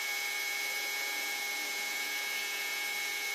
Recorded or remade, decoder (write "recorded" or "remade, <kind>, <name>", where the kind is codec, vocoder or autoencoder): remade, vocoder, Vocos